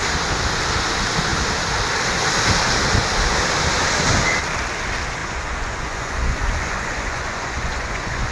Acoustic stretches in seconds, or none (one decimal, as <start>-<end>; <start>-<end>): 0.0-5.2